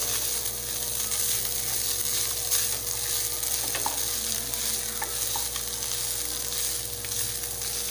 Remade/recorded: recorded